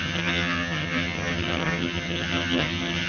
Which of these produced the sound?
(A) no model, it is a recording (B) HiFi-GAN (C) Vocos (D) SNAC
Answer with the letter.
B